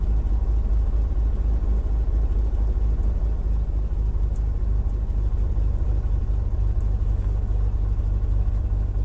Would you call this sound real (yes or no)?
yes